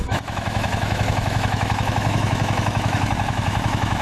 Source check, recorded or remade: remade